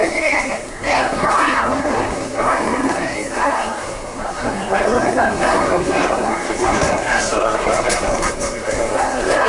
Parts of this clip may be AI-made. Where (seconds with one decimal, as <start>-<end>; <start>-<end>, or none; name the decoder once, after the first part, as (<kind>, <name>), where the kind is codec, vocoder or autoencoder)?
0.0-9.5 (codec, SNAC)